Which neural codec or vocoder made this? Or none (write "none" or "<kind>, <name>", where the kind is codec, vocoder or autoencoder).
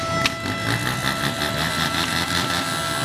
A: none